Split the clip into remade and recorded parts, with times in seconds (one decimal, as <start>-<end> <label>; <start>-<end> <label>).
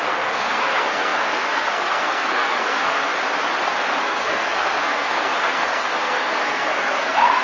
0.0-3.1 remade; 3.1-4.0 recorded; 4.0-7.4 remade